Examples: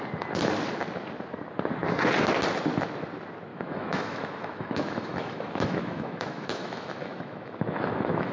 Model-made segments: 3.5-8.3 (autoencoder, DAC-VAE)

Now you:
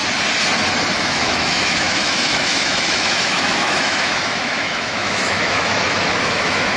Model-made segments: 1.0-6.8 (autoencoder, DAC-VAE)

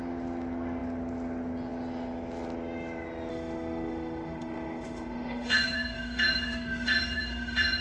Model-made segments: 3.3-7.8 (autoencoder, DAC-VAE)